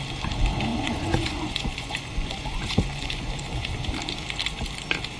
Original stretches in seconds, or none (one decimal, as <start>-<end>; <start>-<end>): 0.0-0.7; 3.7-5.2